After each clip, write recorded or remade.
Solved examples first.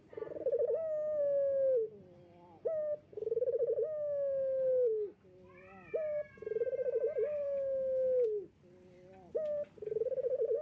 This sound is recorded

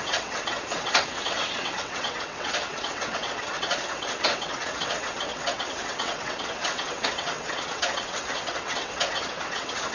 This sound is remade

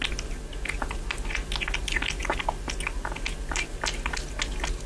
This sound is recorded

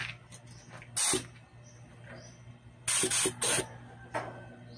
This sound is recorded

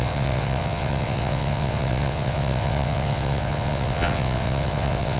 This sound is remade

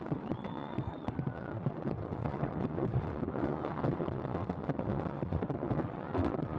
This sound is remade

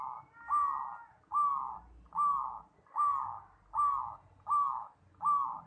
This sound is recorded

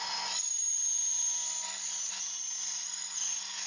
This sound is recorded